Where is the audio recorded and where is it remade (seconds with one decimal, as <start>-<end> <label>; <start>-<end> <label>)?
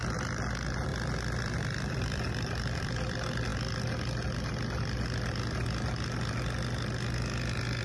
0.0-0.9 remade; 0.9-1.4 recorded; 1.4-3.5 remade; 3.5-7.8 recorded